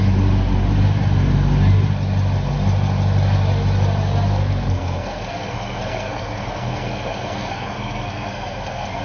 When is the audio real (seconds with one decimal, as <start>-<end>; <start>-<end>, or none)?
0.0-4.3